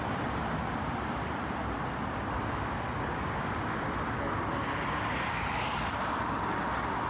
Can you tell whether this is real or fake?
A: real